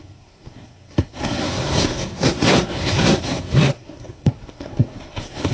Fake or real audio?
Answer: fake